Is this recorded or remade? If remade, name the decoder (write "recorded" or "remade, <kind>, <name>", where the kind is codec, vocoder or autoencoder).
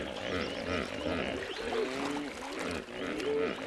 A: recorded